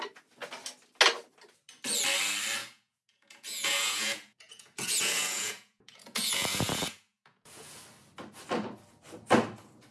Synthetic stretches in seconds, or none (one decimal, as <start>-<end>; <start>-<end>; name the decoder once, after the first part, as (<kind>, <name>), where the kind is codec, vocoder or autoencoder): 2.6-7.8 (vocoder, Vocos)